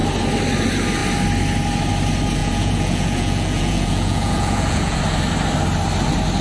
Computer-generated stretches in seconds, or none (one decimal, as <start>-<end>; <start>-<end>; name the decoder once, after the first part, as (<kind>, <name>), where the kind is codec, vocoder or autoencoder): 2.4-5.0 (vocoder, Vocos)